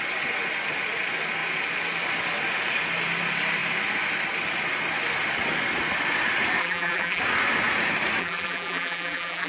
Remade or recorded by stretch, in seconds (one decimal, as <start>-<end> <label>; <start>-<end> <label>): 0.0-6.6 recorded; 6.6-7.2 remade; 7.2-8.2 recorded; 8.2-9.5 remade